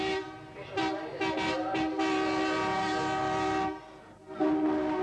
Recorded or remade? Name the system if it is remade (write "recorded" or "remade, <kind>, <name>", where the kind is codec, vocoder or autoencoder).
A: recorded